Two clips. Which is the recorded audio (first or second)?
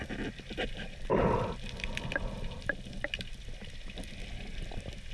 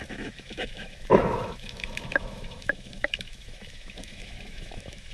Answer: first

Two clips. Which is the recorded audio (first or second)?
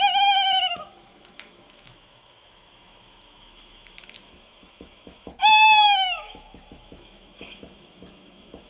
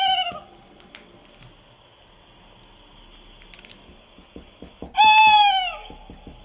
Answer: second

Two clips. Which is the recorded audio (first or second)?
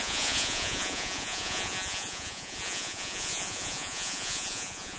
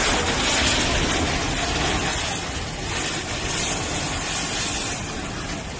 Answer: second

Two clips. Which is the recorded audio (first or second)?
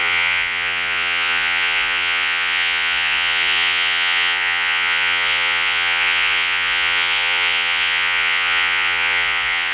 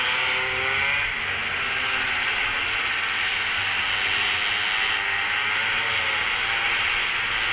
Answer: second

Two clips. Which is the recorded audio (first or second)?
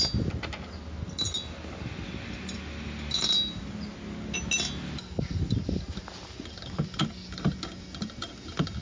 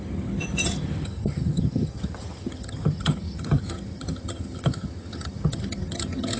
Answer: first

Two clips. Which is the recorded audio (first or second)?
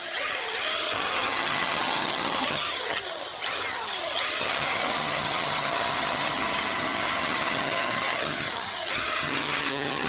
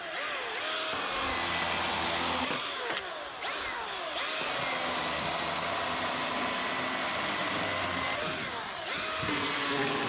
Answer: second